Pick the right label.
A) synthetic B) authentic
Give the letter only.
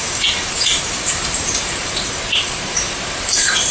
A